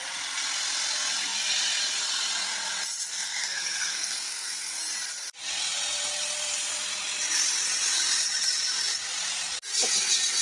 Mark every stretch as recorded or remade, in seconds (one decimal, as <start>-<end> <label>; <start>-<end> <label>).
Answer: 0.0-3.1 recorded; 3.1-4.8 remade; 4.8-10.4 recorded